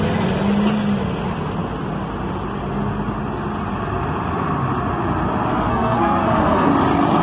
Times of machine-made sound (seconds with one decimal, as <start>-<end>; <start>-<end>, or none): 5.5-6.7